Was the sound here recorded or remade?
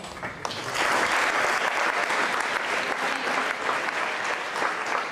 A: recorded